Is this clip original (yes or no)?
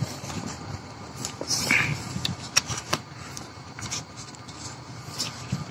no